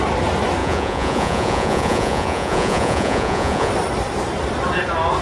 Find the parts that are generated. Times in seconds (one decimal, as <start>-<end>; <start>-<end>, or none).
0.6-3.7